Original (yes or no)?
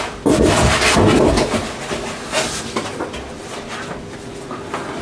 yes